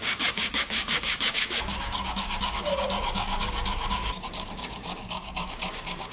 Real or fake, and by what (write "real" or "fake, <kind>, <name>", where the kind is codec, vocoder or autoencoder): fake, codec, DAC